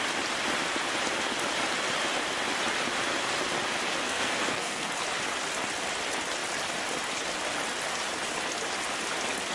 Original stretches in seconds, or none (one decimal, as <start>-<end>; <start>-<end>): 0.0-4.0; 4.9-9.5